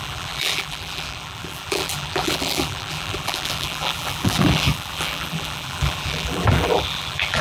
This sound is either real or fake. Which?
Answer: fake